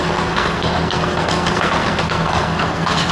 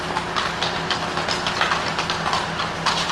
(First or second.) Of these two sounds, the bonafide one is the second